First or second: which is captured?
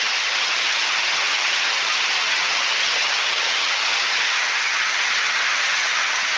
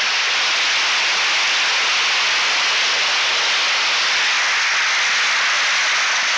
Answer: second